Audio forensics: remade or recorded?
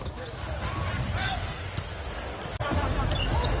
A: recorded